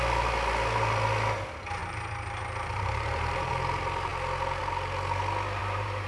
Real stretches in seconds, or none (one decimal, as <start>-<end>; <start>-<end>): 0.0-1.8; 3.5-5.6